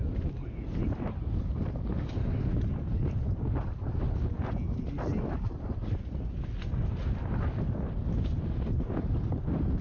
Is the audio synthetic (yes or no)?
no